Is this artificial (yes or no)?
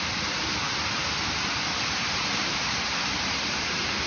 no